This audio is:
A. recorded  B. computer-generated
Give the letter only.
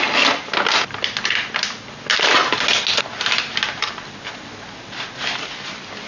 A